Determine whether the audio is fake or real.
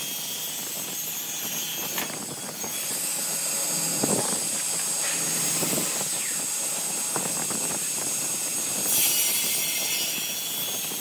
real